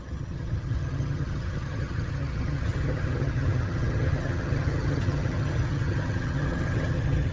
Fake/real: fake